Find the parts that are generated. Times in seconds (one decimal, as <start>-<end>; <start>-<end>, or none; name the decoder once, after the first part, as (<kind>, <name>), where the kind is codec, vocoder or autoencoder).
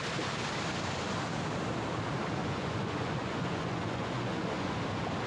2.4-4.8 (vocoder, Vocos)